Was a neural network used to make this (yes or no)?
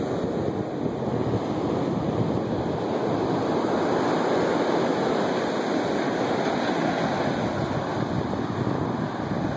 no